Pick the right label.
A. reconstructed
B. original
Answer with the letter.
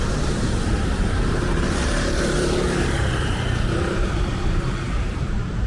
A